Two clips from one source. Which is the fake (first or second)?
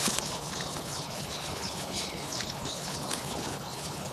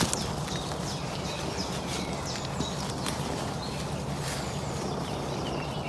first